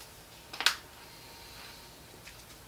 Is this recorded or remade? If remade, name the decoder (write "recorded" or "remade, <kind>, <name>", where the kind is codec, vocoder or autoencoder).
recorded